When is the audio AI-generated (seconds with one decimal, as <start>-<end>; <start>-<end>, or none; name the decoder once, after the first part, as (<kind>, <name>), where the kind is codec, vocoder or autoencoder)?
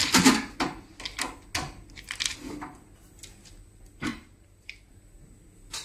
0.0-1.0 (vocoder, BigVGAN v2); 4.1-4.9